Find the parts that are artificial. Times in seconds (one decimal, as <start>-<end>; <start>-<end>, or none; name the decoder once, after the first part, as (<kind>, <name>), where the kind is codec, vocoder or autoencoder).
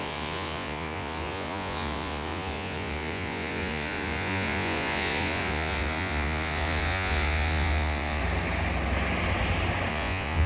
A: 0.0-8.2 (vocoder, Vocos); 9.9-10.5